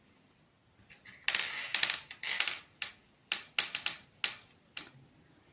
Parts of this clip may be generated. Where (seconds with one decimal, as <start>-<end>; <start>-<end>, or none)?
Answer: none